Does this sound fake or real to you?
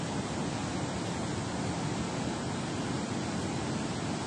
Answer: real